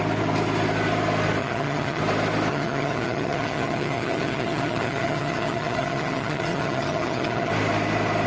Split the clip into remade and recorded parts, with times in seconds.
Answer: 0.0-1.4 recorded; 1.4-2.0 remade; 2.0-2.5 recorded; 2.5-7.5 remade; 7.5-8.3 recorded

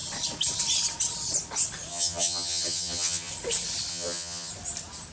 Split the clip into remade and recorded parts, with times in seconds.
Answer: 0.0-1.9 recorded; 1.9-3.3 remade; 3.3-3.9 recorded; 3.9-4.5 remade; 4.5-5.1 recorded